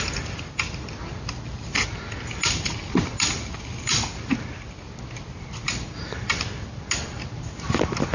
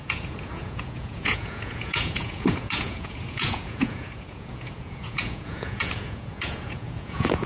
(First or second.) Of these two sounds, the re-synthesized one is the second